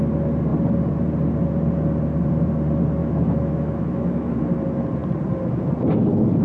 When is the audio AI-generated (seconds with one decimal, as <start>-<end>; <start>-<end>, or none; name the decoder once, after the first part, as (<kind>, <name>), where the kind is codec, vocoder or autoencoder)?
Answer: 3.0-4.4 (autoencoder, DAC-VAE)